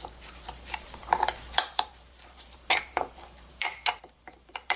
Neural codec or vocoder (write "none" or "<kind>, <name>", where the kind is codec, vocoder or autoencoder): vocoder, BigVGAN v2